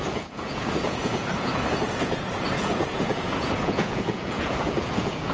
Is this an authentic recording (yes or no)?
no